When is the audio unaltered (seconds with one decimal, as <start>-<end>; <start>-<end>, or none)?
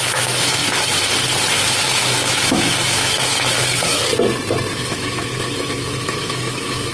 0.6-1.5; 4.1-4.7